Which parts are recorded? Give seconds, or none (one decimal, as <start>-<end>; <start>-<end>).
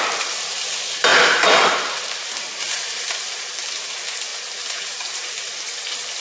0.0-1.1; 3.4-4.3; 5.3-6.2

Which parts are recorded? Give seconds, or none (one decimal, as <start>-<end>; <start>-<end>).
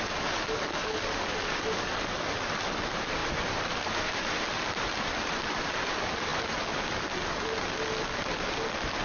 0.0-3.2; 5.6-9.0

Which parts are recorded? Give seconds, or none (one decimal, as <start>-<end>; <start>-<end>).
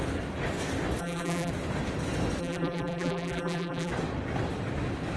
0.0-1.0; 1.5-2.4; 3.9-5.2